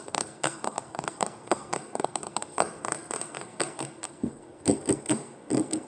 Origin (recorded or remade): remade